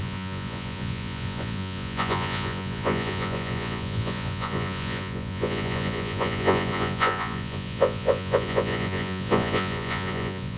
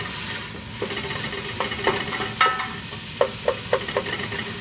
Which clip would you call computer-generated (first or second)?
first